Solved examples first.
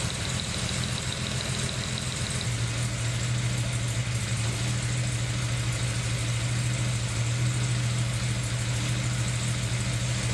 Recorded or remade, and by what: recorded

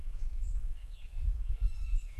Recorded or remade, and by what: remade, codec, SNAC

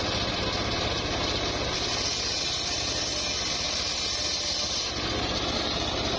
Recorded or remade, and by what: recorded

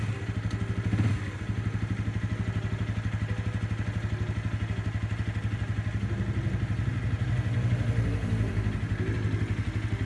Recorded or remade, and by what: recorded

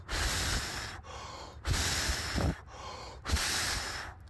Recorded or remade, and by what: recorded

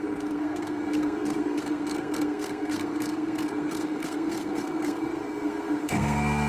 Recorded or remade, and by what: remade, codec, SNAC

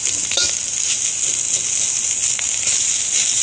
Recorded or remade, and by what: recorded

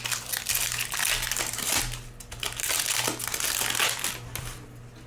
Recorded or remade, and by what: recorded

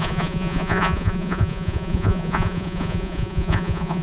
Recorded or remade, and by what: remade, vocoder, Vocos